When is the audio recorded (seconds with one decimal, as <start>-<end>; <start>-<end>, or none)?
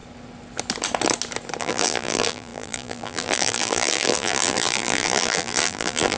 0.0-1.6